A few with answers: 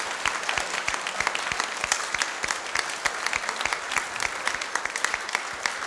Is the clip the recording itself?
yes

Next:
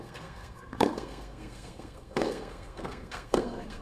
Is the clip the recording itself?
no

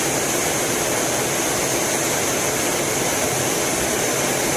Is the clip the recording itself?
yes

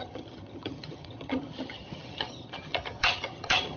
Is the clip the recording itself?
no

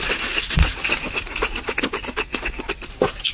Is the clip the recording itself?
yes